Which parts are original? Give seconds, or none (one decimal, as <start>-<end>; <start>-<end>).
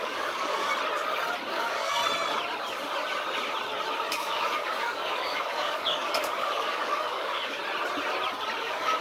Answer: 0.7-1.5; 2.0-4.1; 7.6-8.6